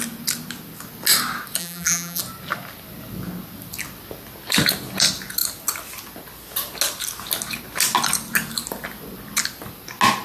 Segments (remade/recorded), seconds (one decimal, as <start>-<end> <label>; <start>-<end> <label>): 0.0-1.6 recorded; 1.6-2.2 remade; 2.2-10.2 recorded